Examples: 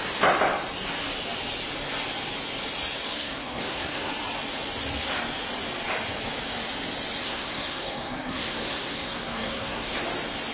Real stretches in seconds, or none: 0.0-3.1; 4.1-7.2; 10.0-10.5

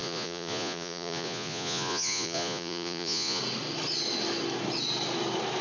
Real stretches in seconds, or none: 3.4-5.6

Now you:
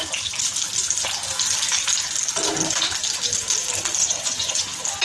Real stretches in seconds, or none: 0.0-4.0; 4.6-5.0

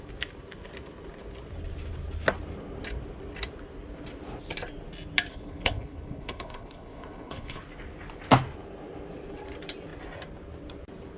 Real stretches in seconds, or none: 0.0-5.3; 7.6-11.2